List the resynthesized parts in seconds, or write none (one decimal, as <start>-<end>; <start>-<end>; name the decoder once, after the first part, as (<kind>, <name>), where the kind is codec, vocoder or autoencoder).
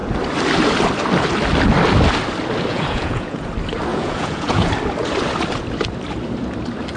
2.7-3.5 (vocoder, Vocos); 3.9-4.7